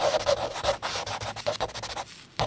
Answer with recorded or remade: recorded